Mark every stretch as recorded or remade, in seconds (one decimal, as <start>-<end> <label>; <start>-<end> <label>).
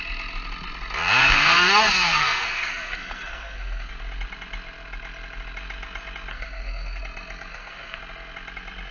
0.0-1.2 recorded; 1.2-3.9 remade; 3.9-6.3 recorded; 6.3-7.0 remade; 7.0-7.5 recorded; 7.5-8.0 remade; 8.0-8.9 recorded